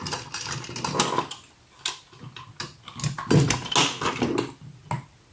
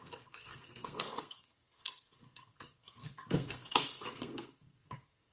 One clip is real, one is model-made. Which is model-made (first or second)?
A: second